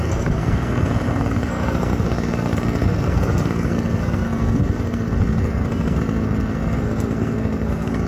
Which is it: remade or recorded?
remade